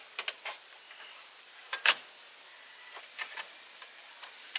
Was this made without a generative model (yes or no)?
yes